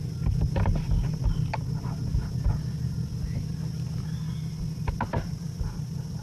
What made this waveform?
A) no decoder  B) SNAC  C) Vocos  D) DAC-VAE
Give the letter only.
A